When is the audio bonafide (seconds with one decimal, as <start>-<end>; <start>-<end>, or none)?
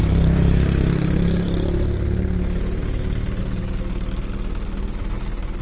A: 3.4-5.6